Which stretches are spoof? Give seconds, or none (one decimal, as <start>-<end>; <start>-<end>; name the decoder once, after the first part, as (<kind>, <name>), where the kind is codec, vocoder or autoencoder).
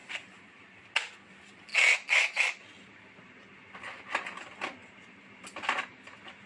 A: 0.0-0.9 (vocoder, BigVGAN v2); 4.8-5.3